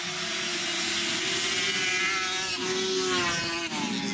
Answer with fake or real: real